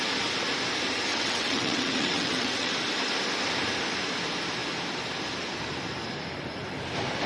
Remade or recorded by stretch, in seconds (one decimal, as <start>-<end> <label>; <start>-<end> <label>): 0.0-1.1 recorded; 1.1-2.7 remade; 2.7-7.3 recorded